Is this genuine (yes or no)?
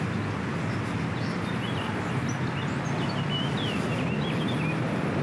yes